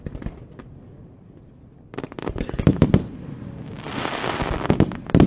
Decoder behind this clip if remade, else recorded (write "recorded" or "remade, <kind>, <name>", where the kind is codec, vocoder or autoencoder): recorded